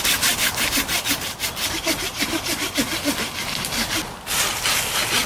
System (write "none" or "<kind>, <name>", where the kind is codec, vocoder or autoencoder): none